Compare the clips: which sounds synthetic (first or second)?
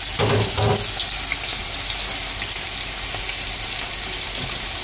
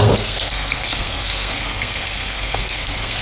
second